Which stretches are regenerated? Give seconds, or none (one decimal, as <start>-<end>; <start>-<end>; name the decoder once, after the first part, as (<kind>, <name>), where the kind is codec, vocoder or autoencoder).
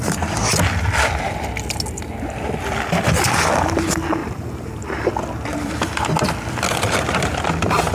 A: 4.2-5.1 (vocoder, BigVGAN v2)